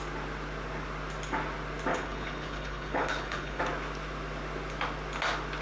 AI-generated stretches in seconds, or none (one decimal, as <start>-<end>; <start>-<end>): 1.9-3.6